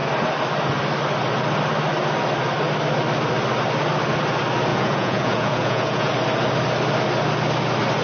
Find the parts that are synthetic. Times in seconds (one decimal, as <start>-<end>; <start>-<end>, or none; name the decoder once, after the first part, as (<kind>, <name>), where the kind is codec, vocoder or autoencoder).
4.7-6.1 (vocoder, Vocos)